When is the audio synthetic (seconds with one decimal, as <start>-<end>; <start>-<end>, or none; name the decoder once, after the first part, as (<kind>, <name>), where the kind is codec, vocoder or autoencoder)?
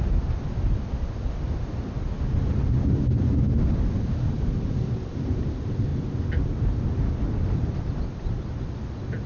none